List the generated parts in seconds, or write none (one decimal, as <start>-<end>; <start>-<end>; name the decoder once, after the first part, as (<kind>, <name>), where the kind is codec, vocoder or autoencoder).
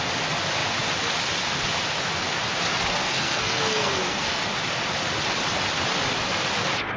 3.0-4.4 (codec, SNAC)